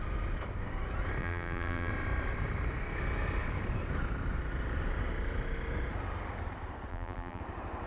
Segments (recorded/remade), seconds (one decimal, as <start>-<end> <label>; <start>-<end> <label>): 0.0-1.2 recorded; 1.2-1.9 remade; 1.9-6.9 recorded; 6.9-7.4 remade; 7.4-7.9 recorded